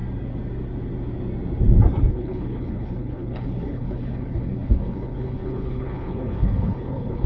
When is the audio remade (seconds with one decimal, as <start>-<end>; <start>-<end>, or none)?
2.1-7.3